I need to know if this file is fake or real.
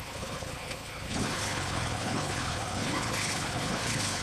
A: fake